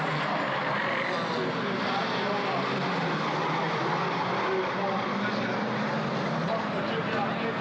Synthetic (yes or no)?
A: no